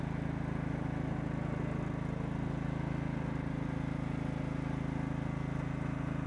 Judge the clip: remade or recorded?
recorded